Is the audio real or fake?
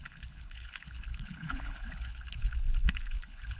fake